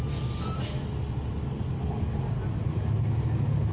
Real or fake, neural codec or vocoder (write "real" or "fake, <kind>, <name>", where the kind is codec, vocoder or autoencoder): real